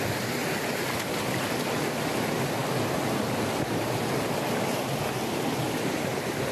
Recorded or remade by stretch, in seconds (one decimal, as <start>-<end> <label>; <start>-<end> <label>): 0.0-6.5 recorded